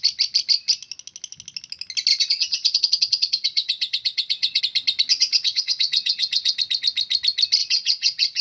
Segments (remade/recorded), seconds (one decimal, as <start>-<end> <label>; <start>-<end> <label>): 0.0-2.1 recorded; 2.1-4.6 remade; 4.6-5.1 recorded; 5.1-6.6 remade; 6.6-7.6 recorded; 7.6-8.4 remade